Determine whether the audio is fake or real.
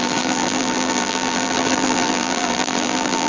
fake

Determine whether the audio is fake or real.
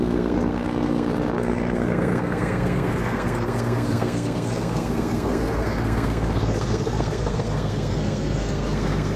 fake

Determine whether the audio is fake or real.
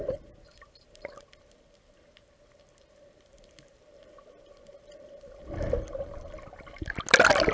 real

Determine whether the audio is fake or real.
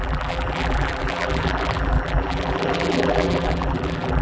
fake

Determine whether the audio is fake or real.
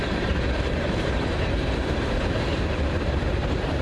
fake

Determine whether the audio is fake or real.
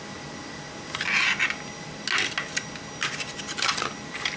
real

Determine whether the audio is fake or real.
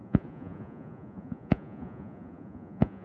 fake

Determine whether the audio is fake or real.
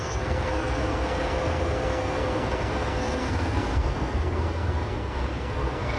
fake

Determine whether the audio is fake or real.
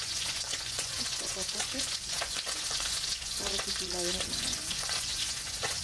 fake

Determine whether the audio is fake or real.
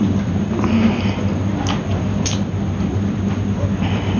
real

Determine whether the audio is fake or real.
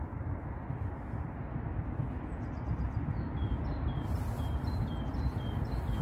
real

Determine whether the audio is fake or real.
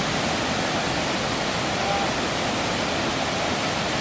real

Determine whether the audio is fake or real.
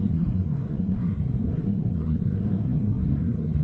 fake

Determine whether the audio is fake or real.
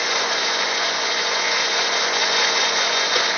fake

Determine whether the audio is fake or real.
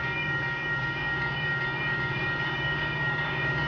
fake